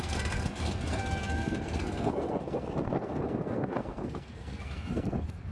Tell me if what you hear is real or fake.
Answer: fake